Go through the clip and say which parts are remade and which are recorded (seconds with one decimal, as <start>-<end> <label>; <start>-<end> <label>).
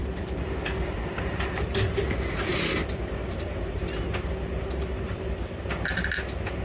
0.0-3.3 remade; 3.3-6.6 recorded